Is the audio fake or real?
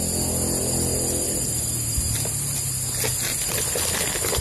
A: real